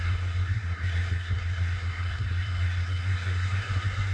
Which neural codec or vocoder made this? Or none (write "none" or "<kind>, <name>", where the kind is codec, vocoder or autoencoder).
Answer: codec, SNAC